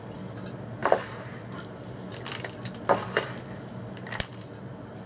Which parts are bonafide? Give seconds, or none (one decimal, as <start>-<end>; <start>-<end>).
0.0-5.1